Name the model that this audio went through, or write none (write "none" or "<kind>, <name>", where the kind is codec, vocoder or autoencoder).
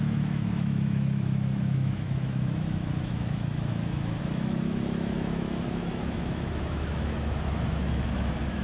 autoencoder, DAC-VAE